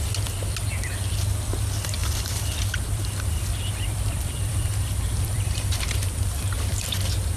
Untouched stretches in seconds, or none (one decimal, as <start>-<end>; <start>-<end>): 0.0-2.0; 6.2-7.4